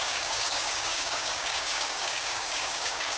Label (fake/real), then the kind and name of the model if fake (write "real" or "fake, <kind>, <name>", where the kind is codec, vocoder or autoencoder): fake, codec, DAC